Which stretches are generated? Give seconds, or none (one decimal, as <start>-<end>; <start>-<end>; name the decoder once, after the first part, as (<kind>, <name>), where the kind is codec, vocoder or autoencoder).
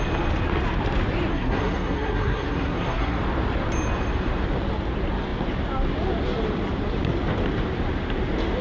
1.3-3.2 (codec, SNAC)